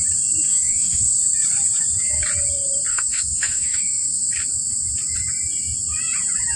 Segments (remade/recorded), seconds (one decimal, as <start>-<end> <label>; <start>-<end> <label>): 0.0-0.5 recorded; 0.5-1.2 remade; 1.2-2.9 recorded; 2.9-4.2 remade; 4.2-6.6 recorded